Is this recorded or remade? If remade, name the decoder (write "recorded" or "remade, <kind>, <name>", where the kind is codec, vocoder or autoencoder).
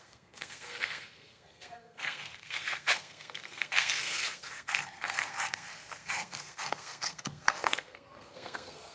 remade, codec, SNAC